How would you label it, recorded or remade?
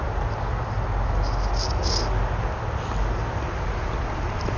recorded